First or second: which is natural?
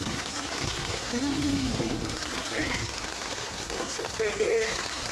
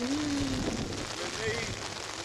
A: second